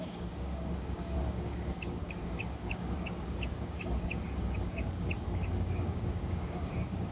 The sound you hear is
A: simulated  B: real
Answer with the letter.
A